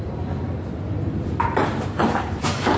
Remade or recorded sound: remade